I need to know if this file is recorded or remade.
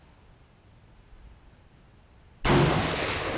recorded